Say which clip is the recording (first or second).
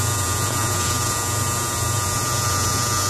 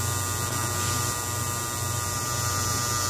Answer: second